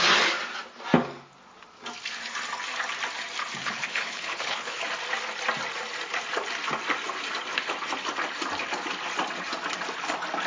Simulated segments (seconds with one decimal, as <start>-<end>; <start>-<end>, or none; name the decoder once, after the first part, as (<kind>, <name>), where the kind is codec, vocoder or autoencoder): 3.6-4.8 (codec, HILCodec)